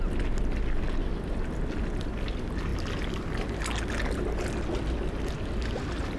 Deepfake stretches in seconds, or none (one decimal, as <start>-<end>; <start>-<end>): none